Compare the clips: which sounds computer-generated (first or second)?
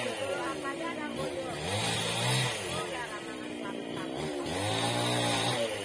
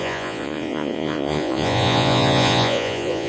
second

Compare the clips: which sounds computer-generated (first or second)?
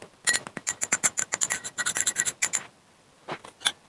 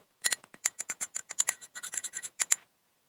second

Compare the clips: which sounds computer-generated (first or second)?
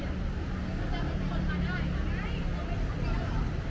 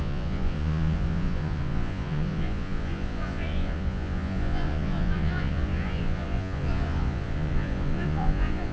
second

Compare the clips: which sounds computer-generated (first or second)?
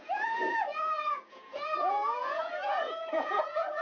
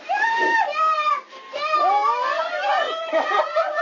first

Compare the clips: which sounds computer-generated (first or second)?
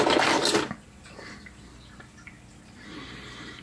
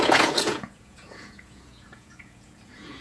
second